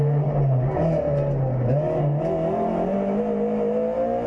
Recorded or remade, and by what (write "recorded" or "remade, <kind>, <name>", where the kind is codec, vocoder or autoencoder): recorded